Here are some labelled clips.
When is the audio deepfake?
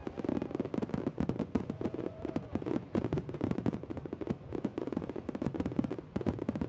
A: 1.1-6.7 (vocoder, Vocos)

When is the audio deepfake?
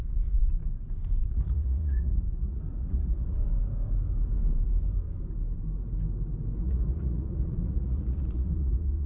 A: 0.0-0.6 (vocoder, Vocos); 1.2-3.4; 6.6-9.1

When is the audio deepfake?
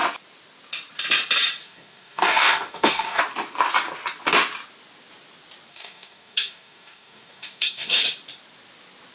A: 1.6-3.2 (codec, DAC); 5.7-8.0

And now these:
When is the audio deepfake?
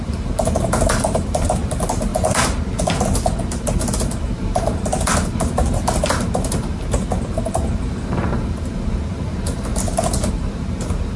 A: 0.0-2.1 (vocoder, BigVGAN v2); 4.2-4.9; 5.7-7.0; 7.8-9.7; 10.3-11.2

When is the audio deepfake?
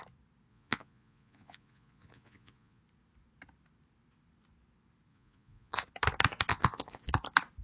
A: 0.5-2.8 (vocoder, Vocos); 5.1-5.8; 6.5-7.1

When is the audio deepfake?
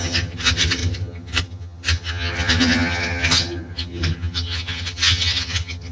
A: 0.0-5.9 (vocoder, HiFi-GAN)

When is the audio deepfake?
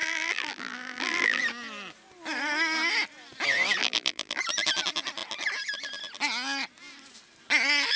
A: 0.0-1.4 (vocoder, BigVGAN v2); 3.8-4.4